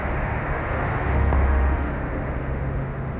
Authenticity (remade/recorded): remade